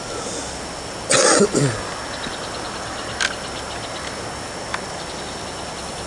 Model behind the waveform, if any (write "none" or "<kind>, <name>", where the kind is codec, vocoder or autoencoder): none